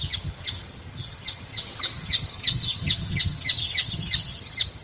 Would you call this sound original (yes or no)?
no